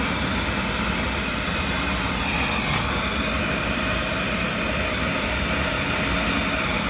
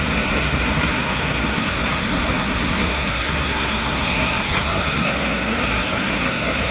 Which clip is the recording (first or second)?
first